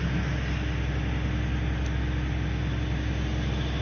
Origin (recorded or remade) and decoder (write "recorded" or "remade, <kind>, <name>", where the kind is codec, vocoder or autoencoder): recorded